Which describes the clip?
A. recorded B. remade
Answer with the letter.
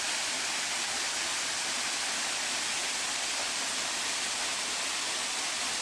A